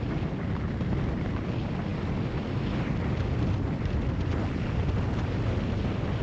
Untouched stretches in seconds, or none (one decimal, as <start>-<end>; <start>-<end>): 0.0-6.2